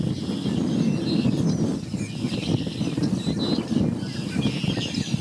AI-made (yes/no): no